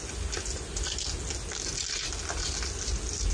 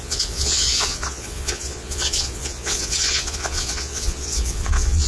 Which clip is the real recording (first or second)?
first